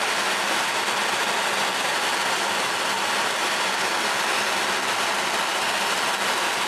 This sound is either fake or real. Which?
real